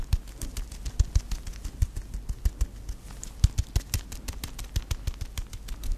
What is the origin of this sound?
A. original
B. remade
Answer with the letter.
A